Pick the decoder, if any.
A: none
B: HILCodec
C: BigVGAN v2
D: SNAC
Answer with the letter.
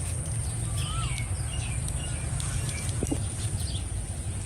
A